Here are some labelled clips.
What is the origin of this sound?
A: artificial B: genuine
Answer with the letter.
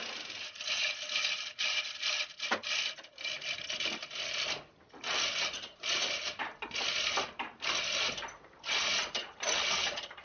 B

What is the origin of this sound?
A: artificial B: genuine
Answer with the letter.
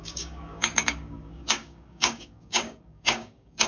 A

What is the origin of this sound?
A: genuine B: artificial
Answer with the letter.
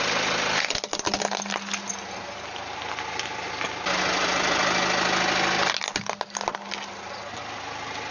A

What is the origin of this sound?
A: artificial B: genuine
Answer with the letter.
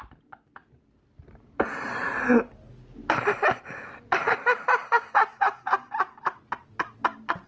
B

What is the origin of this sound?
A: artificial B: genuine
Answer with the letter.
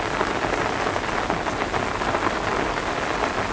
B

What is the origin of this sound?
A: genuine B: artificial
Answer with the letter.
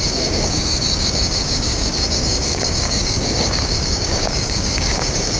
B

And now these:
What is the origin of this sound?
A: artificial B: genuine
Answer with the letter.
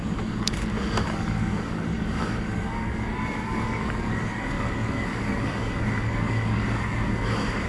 A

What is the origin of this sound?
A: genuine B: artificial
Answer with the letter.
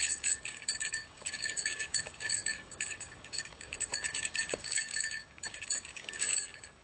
B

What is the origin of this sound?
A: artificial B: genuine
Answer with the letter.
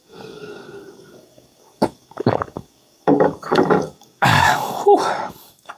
A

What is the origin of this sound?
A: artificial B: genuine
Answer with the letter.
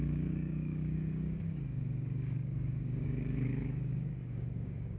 A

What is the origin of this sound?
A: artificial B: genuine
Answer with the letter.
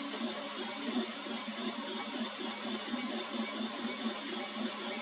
B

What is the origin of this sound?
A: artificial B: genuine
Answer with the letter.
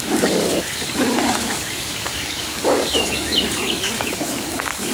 A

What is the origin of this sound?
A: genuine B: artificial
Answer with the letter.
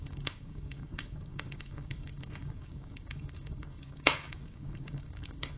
B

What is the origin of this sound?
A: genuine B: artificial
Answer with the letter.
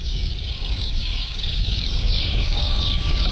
B